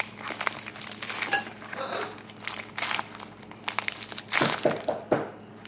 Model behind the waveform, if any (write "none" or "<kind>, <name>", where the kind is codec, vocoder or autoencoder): none